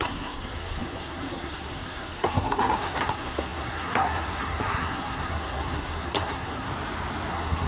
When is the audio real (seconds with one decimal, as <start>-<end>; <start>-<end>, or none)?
6.7-7.3